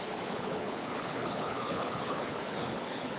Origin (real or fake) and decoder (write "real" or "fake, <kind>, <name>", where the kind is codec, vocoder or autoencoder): fake, codec, HILCodec